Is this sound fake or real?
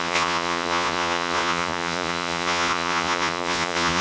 fake